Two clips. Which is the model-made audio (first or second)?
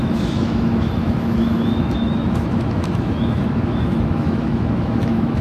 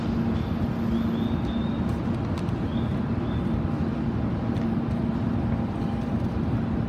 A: first